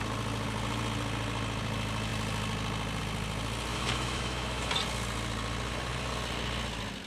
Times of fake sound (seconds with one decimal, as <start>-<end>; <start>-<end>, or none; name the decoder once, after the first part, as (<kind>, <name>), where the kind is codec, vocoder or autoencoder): 3.7-4.7 (autoencoder, DAC-VAE)